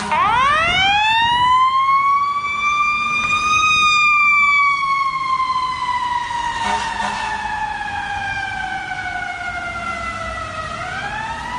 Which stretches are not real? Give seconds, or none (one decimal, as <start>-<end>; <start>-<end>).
none